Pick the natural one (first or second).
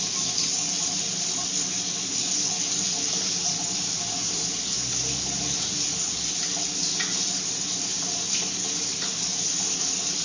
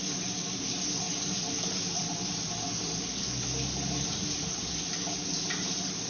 first